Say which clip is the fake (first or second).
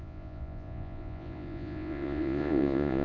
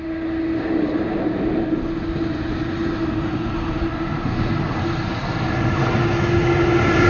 first